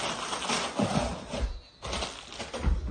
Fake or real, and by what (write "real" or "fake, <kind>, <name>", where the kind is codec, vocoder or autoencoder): real